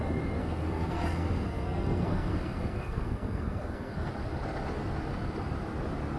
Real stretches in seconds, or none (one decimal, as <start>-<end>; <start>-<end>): 0.0-0.4; 4.1-6.2